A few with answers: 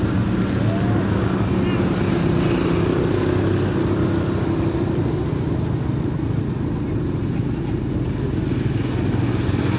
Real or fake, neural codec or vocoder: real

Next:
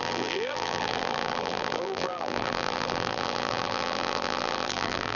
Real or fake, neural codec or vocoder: fake, vocoder, BigVGAN v2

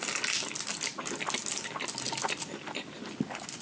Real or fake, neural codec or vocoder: real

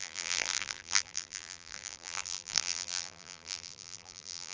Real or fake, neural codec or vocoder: fake, vocoder, BigVGAN v2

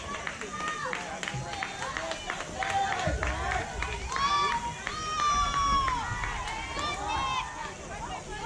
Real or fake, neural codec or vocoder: real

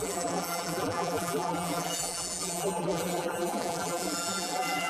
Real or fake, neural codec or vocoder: fake, vocoder, BigVGAN v2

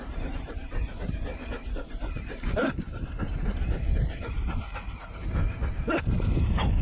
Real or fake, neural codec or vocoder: fake, vocoder, BigVGAN v2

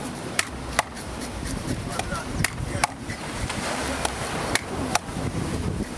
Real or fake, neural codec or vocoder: fake, vocoder, BigVGAN v2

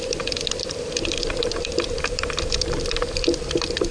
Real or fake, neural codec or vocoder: fake, vocoder, BigVGAN v2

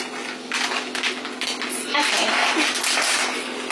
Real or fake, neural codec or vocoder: real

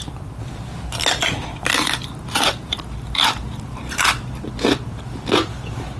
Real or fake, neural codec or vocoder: fake, vocoder, BigVGAN v2